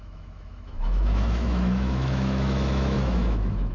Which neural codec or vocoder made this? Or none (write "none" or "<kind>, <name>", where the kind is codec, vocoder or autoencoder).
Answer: autoencoder, DAC-VAE